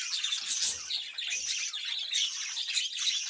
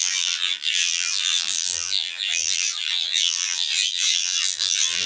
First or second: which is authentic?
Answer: first